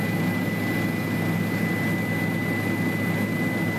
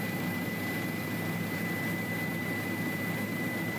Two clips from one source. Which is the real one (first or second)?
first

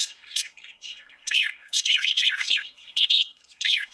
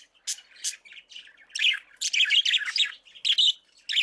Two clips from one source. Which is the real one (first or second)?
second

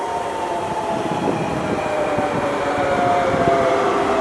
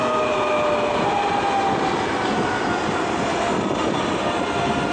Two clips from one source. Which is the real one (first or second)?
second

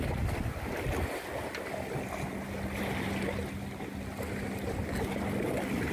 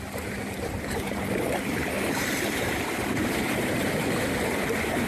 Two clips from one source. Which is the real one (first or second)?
first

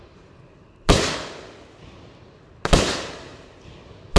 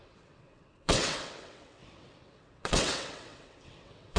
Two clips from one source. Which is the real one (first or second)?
first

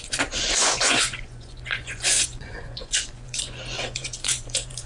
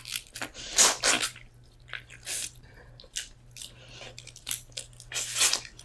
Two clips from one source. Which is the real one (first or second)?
second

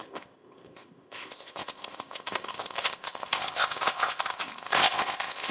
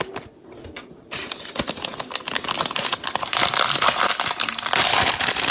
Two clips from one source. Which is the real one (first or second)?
second